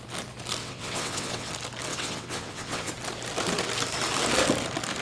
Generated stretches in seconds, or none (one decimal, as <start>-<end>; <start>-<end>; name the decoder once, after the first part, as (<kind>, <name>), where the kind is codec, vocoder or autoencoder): 0.6-1.5 (vocoder, WaveNeXt); 1.9-2.9